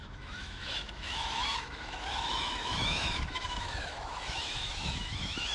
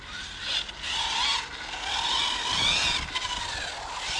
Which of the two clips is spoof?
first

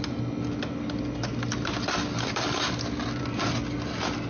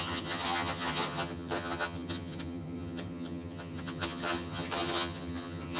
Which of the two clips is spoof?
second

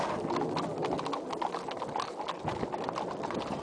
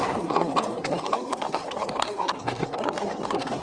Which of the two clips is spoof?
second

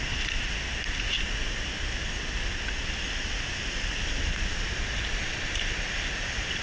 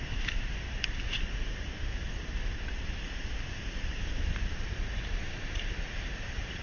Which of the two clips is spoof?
second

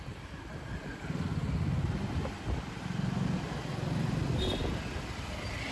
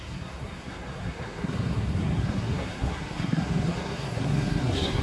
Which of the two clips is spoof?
second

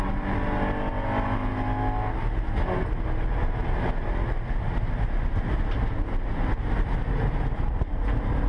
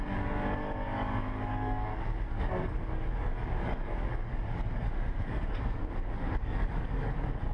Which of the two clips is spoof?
second